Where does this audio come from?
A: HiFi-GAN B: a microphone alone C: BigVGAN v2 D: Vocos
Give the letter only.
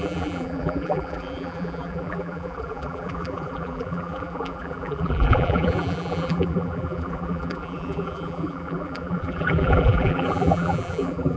C